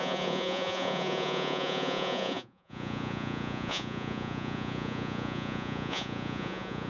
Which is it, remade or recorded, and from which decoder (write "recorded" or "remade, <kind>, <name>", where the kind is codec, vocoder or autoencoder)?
remade, vocoder, Vocos